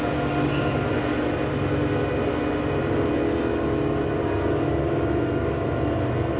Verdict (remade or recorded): recorded